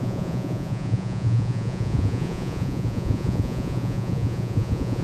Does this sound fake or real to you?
fake